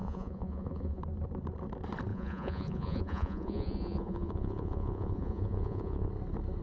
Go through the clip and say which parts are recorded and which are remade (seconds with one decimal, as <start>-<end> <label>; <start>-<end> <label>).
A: 0.0-1.0 remade; 1.0-2.1 recorded; 2.1-6.1 remade; 6.1-6.6 recorded